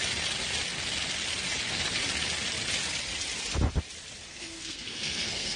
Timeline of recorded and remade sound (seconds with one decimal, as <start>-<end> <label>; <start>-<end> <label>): 0.0-4.3 recorded; 4.3-5.6 remade